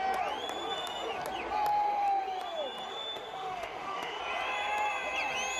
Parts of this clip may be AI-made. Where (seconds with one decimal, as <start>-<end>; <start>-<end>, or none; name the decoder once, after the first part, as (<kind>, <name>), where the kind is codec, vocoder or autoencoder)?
2.9-4.2 (autoencoder, DAC-VAE)